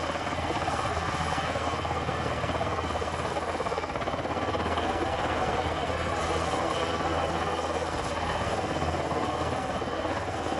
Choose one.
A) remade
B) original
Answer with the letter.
A